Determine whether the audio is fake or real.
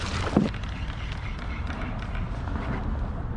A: real